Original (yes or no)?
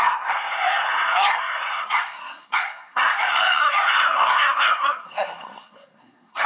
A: no